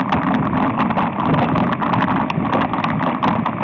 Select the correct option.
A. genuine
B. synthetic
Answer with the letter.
A